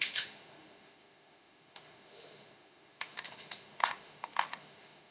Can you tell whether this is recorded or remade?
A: remade